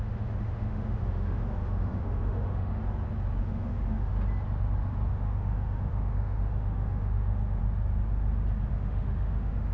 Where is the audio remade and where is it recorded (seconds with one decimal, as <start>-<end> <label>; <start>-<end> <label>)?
0.0-2.8 remade; 2.8-3.4 recorded; 3.4-4.1 remade; 4.1-5.1 recorded; 5.1-7.6 remade; 7.6-8.7 recorded; 8.7-9.7 remade